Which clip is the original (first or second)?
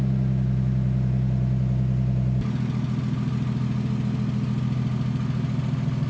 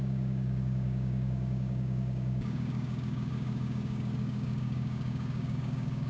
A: first